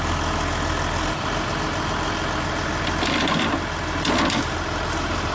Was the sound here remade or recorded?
recorded